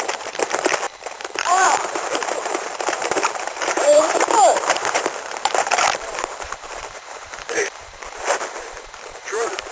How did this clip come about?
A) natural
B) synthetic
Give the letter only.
B